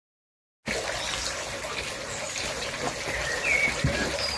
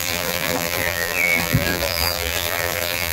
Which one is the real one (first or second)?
first